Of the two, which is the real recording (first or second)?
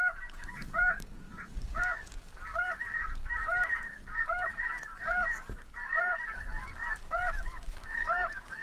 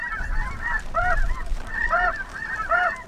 second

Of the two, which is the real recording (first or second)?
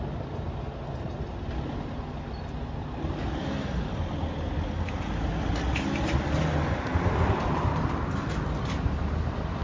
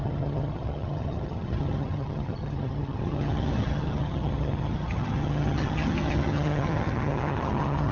first